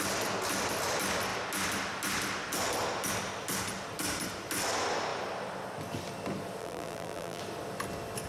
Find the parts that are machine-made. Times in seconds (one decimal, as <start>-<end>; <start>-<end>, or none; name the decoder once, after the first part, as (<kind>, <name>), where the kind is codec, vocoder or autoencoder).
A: 6.6-7.4 (vocoder, BigVGAN v2)